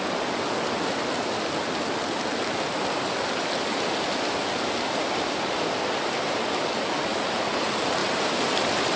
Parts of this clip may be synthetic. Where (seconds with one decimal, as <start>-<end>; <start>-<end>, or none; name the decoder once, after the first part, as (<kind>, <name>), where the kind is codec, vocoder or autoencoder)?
8.0-8.6 (vocoder, BigVGAN v2)